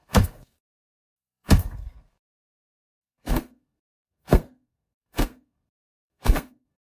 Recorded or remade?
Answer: remade